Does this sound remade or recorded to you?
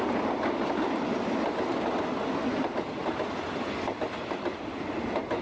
recorded